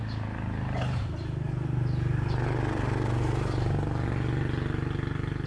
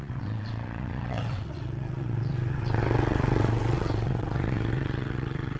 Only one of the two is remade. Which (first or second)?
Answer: second